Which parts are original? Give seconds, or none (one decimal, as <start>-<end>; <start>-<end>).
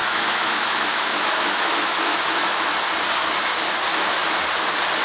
2.6-3.9; 4.4-5.0